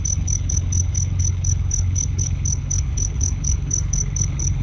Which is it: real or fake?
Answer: fake